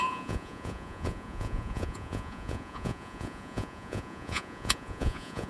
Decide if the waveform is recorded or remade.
remade